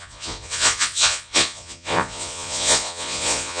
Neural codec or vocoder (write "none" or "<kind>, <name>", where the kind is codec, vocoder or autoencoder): vocoder, Vocos